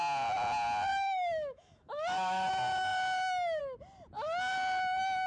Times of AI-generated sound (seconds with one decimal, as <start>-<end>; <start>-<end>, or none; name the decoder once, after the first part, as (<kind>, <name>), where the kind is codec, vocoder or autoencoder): 0.9-2.5 (autoencoder, DAC-VAE)